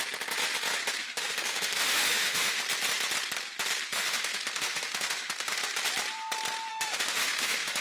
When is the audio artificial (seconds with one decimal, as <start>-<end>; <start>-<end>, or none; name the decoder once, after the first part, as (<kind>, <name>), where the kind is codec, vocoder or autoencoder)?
1.0-2.6 (autoencoder, DAC-VAE); 3.9-5.7; 6.7-7.8